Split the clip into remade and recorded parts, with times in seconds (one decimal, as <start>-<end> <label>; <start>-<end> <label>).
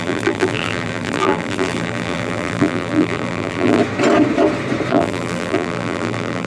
0.0-3.8 remade; 3.8-4.9 recorded; 4.9-6.5 remade